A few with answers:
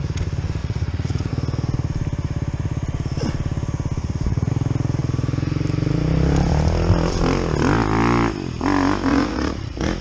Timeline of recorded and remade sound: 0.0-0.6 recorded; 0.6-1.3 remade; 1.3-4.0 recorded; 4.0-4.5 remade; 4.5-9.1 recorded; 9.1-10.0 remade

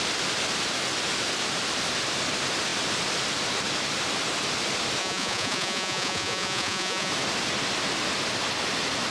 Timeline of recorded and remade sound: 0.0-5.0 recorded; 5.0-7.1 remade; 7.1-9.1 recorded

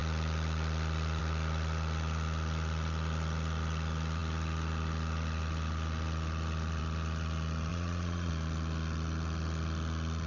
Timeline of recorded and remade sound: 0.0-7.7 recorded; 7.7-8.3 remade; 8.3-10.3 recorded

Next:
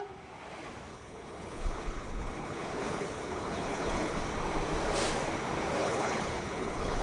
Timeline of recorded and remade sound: 0.0-0.9 recorded; 0.9-4.2 remade; 4.2-5.8 recorded; 5.8-7.0 remade